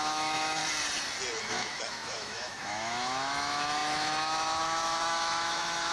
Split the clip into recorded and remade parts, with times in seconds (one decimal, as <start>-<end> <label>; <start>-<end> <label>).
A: 0.0-0.6 remade; 0.6-1.4 recorded; 1.4-5.9 remade